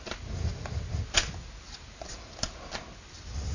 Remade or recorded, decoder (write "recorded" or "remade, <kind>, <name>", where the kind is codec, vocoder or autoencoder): recorded